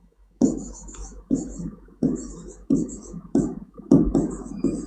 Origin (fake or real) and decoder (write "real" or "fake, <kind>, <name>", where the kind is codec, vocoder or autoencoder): fake, autoencoder, DAC-VAE